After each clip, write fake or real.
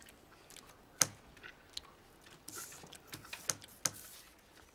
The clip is real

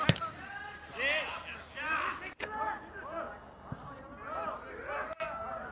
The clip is real